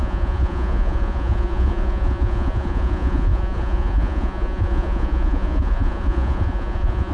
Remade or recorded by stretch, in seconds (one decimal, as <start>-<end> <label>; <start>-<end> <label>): 0.0-7.1 remade